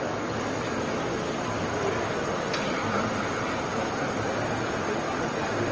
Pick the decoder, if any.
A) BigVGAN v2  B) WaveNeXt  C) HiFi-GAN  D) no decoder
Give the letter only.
D